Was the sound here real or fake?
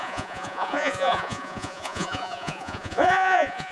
fake